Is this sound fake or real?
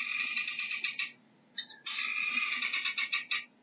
real